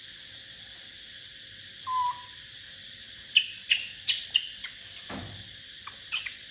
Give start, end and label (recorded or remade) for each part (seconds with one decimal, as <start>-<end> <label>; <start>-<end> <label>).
0.0-6.5 recorded